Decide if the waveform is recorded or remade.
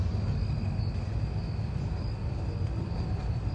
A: recorded